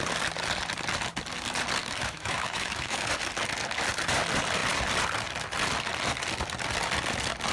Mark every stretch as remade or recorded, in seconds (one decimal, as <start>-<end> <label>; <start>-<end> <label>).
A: 0.0-1.8 recorded; 1.8-3.1 remade; 3.1-7.5 recorded